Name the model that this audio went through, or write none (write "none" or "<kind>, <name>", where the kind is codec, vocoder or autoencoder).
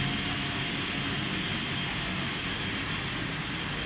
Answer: none